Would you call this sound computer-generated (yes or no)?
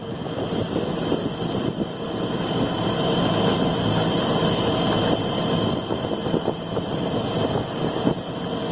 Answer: no